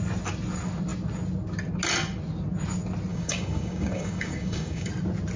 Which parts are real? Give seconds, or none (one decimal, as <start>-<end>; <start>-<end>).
0.0-3.1; 4.9-5.4